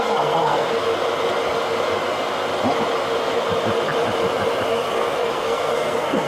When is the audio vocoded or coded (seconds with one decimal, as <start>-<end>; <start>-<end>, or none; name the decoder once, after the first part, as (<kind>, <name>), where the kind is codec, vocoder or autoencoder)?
0.0-0.9 (codec, SNAC); 4.7-6.3